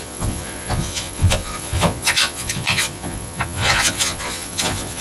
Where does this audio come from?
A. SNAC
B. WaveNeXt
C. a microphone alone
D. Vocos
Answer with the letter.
D